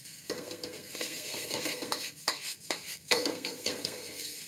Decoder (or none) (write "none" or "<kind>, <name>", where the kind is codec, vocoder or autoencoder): codec, SNAC